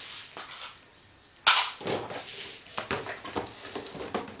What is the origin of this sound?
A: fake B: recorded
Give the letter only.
B